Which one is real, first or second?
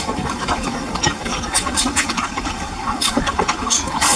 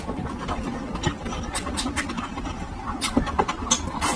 second